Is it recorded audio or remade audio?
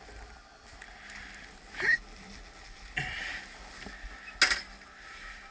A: recorded